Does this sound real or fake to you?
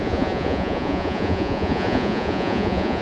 fake